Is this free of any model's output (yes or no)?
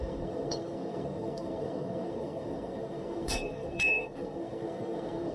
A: no